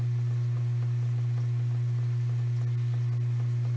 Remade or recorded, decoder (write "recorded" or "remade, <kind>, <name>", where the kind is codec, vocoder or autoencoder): remade, vocoder, BigVGAN v2